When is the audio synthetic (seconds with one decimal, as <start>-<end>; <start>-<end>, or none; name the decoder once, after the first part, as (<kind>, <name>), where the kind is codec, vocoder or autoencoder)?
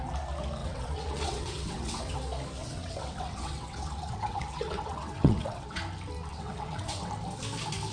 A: 0.6-2.2 (vocoder, WaveNeXt); 2.6-5.8; 6.3-7.1